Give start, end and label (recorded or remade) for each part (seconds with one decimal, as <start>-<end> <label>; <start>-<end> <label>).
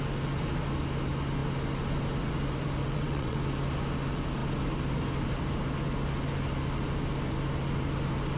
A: 0.0-2.8 recorded; 2.8-3.4 remade; 3.4-8.4 recorded